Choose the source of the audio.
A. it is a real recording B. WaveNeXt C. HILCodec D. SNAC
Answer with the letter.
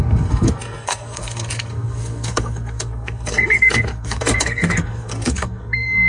D